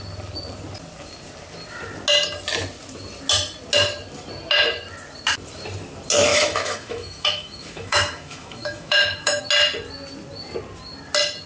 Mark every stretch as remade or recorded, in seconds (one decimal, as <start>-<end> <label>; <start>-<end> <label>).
0.0-6.3 recorded; 6.3-9.4 remade; 9.4-11.5 recorded